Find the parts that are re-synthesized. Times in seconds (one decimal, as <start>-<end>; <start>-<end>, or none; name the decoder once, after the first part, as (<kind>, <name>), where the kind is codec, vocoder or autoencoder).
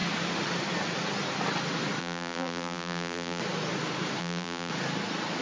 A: 2.0-3.4 (vocoder, BigVGAN v2); 4.2-4.7